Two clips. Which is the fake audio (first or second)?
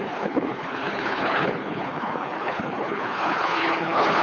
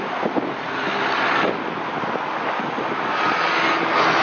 first